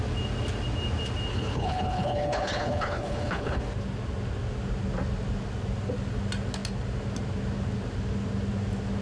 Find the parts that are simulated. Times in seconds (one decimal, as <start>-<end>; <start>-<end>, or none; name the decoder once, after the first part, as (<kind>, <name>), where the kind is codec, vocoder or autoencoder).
1.3-3.6 (codec, HILCodec)